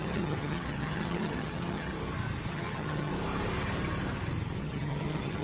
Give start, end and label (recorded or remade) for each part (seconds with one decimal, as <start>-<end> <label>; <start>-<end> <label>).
0.0-1.9 remade; 1.9-2.5 recorded; 2.5-3.1 remade; 3.1-4.6 recorded; 4.6-5.4 remade